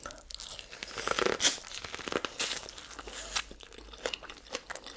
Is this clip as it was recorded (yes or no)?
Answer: yes